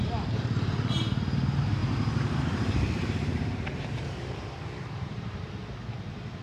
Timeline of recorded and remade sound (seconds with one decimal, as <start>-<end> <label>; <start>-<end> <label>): 0.0-1.8 recorded; 1.8-5.6 remade; 5.6-6.4 recorded

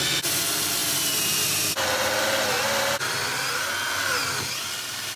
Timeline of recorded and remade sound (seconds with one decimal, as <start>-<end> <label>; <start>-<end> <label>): 0.0-5.2 recorded

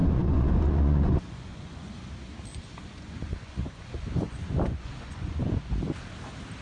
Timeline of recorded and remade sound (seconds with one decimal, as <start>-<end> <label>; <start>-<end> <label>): 0.0-1.9 remade; 1.9-2.5 recorded; 2.5-5.7 remade; 5.7-6.6 recorded

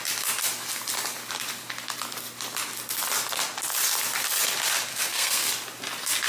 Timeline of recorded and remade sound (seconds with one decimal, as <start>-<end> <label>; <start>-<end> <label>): 0.0-4.9 recorded; 4.9-5.5 remade; 5.5-6.3 recorded